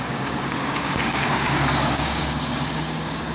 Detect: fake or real fake